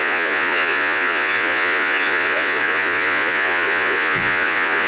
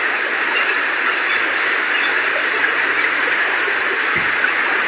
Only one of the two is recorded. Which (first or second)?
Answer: second